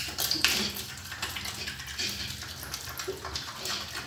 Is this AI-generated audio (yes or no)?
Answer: no